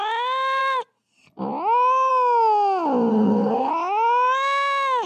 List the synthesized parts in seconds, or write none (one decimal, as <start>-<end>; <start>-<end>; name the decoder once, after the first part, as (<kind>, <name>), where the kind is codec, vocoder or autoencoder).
3.1-3.7 (codec, SNAC)